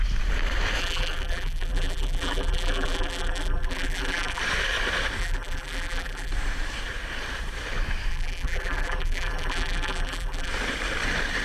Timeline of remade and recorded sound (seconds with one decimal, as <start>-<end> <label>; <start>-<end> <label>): 0.0-0.8 recorded; 0.8-4.4 remade; 4.4-5.2 recorded; 5.2-6.3 remade; 6.3-8.1 recorded; 8.1-10.5 remade; 10.5-11.4 recorded